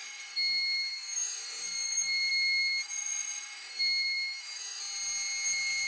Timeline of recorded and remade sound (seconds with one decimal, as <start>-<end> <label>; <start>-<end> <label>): 0.0-4.8 remade; 4.8-5.9 recorded

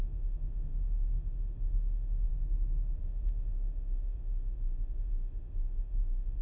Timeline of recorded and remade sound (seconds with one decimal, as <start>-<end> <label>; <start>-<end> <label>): 0.0-2.3 remade; 2.3-3.0 recorded; 3.0-6.4 remade